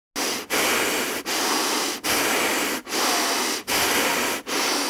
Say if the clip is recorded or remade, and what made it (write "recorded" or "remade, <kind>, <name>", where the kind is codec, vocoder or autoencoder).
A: recorded